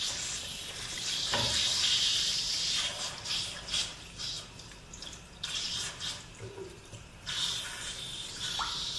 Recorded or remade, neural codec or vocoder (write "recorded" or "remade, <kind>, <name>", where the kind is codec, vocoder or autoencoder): remade, vocoder, BigVGAN v2